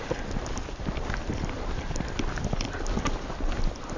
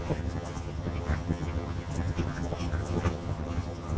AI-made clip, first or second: second